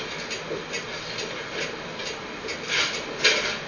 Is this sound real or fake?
real